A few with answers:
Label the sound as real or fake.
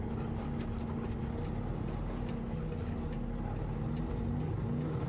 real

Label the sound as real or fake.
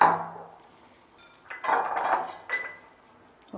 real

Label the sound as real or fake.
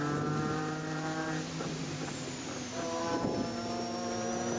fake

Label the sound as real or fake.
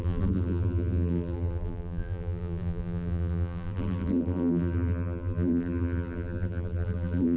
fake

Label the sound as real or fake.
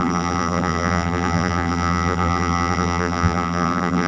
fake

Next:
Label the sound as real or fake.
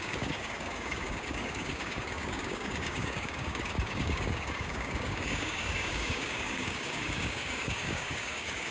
fake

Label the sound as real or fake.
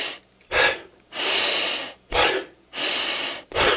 real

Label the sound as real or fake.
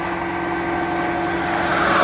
real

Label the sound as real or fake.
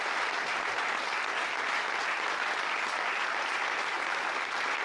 real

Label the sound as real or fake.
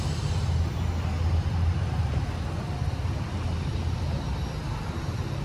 real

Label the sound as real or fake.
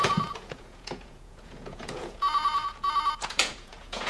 fake